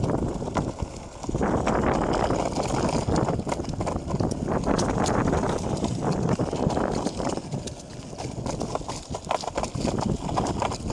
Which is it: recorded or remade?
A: recorded